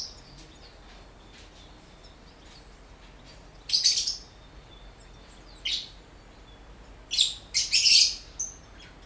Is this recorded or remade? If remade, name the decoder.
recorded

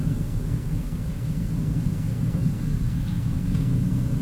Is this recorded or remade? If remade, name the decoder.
remade, codec, SNAC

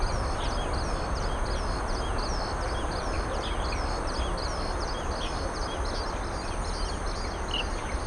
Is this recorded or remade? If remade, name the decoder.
recorded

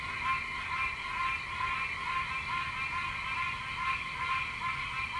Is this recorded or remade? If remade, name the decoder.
recorded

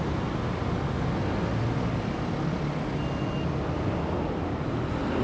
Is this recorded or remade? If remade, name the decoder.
recorded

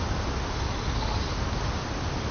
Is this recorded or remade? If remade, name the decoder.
recorded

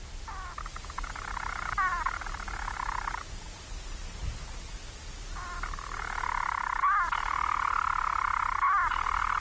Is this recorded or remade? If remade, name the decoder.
recorded